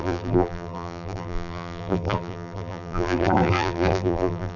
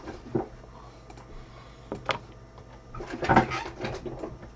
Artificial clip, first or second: first